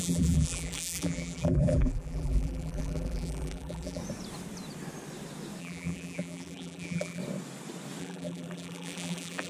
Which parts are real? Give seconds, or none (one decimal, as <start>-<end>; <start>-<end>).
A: 4.0-5.6; 7.2-8.0